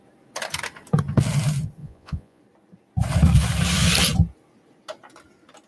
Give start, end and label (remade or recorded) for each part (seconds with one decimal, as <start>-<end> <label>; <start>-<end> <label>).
0.0-1.8 recorded; 1.8-2.4 remade; 2.4-5.7 recorded